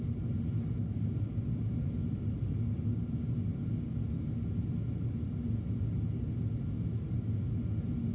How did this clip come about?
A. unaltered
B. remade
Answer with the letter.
A